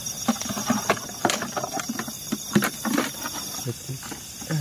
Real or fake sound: real